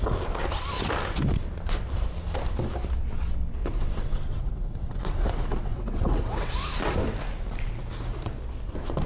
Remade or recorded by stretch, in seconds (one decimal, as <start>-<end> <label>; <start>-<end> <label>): 0.0-3.6 recorded; 3.6-6.5 remade; 6.5-9.1 recorded